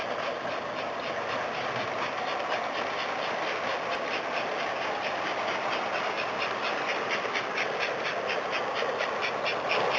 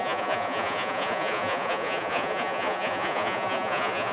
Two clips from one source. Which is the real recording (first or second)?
first